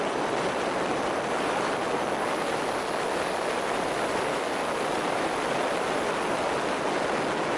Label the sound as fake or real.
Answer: real